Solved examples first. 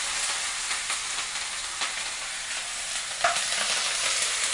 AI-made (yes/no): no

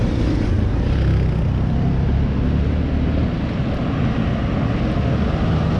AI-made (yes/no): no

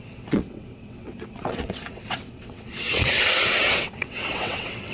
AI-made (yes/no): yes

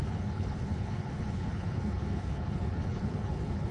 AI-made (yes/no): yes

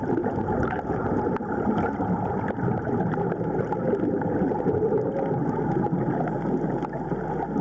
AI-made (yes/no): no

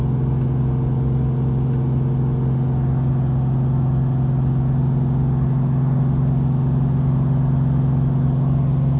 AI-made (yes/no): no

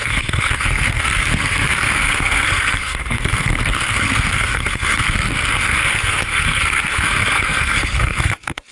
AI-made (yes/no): yes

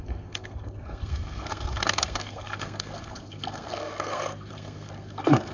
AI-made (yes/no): yes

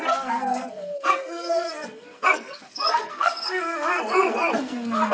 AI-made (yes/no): yes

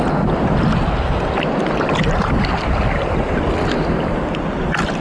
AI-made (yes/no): no